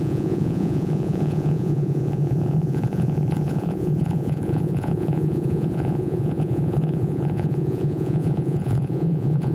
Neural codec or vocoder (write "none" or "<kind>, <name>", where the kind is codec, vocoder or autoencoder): vocoder, Vocos